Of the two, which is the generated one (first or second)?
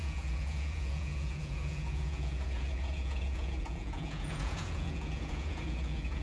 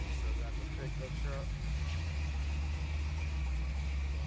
first